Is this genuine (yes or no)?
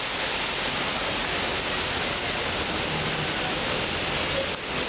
yes